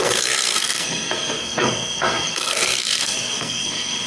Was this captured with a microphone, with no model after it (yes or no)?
no